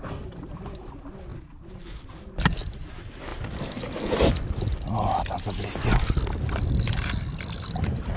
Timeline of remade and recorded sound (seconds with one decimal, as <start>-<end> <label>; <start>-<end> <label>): 0.0-8.2 recorded